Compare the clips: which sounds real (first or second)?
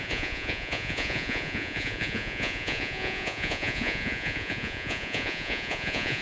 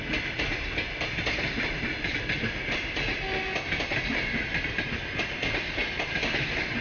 second